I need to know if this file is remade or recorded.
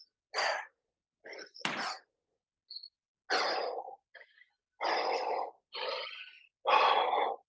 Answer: recorded